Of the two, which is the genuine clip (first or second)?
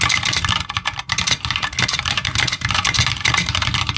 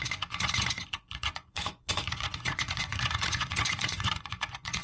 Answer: first